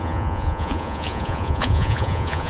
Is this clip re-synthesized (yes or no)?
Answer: yes